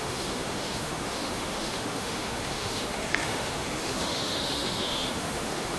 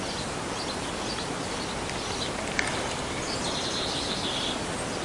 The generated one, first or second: first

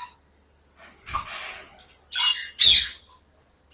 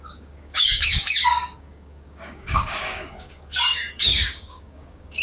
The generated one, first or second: second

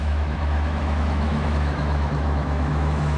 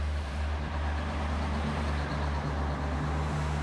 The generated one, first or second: first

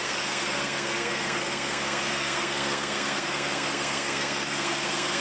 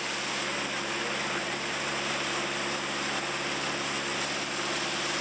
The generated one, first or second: first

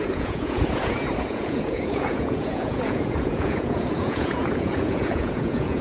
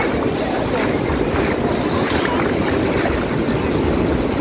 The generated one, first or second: first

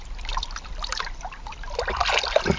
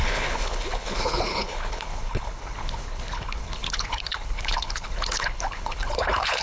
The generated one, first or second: second